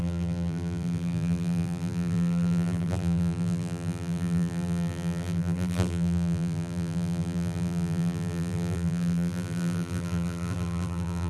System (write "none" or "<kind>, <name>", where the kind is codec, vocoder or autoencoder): vocoder, BigVGAN v2